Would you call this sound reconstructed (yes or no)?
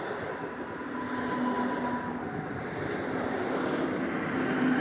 no